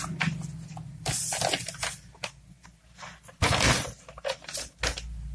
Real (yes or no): yes